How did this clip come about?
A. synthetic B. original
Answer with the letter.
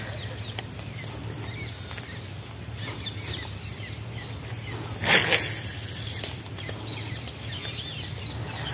B